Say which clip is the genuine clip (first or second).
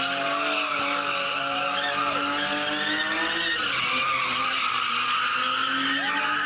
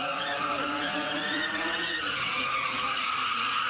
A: first